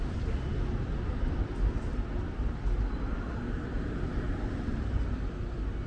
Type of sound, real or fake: real